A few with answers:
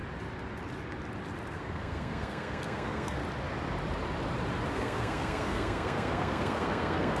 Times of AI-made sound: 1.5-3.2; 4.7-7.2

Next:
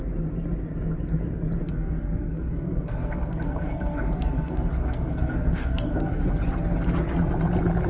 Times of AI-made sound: 1.6-6.1

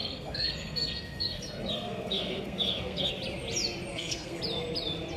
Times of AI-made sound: 0.0-3.1; 3.9-4.4

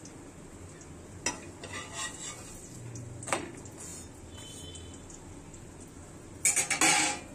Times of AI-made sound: none

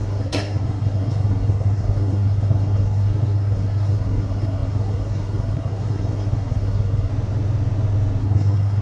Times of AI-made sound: 0.0-7.1; 8.2-8.8

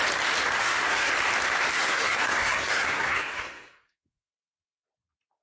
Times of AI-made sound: 0.6-1.1; 1.7-4.3